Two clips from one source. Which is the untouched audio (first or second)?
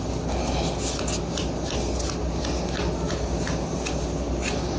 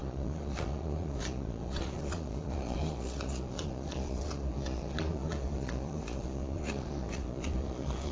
first